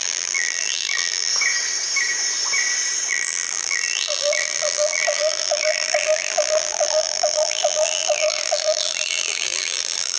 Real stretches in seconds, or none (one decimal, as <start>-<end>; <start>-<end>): 1.3-3.1